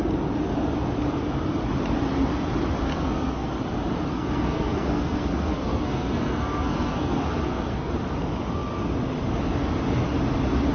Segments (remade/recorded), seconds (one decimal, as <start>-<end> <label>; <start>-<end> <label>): 0.0-2.9 recorded; 2.9-3.5 remade; 3.5-4.1 recorded; 4.1-7.9 remade; 7.9-10.7 recorded